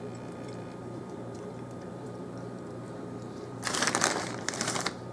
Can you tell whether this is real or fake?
fake